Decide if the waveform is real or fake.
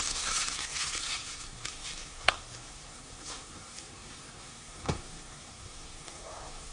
fake